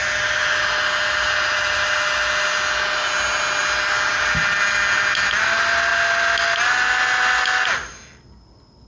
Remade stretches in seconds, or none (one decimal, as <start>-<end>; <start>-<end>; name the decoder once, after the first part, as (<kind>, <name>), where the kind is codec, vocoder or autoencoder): none